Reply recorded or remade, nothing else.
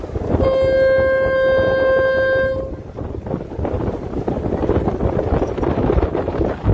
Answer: recorded